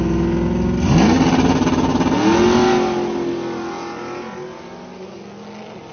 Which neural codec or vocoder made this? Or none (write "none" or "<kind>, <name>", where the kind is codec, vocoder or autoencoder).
none